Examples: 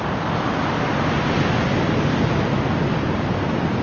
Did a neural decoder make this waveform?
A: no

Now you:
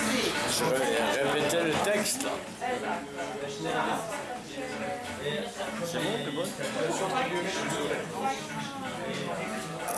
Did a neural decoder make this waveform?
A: no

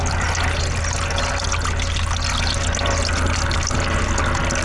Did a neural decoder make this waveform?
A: no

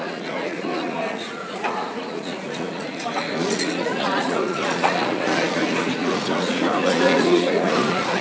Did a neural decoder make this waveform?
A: yes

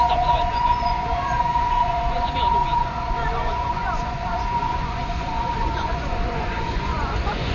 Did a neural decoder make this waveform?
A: yes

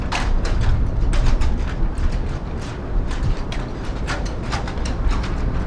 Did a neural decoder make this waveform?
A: yes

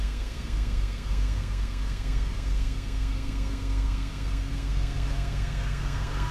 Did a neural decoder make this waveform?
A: yes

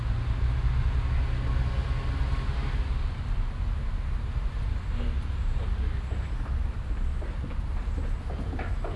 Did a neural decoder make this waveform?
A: no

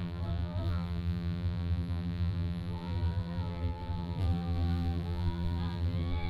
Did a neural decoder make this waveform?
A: yes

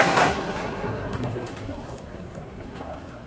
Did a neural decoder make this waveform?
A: yes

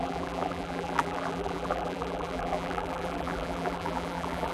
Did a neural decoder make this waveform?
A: yes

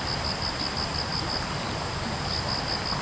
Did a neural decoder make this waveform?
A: no